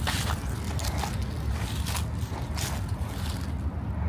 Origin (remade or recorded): recorded